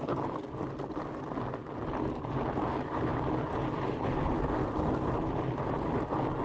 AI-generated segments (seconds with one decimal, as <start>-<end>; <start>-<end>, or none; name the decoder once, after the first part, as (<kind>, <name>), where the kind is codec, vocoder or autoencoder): none